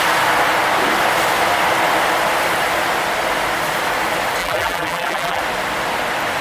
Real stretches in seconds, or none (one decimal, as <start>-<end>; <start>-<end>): 0.0-4.4; 5.4-6.4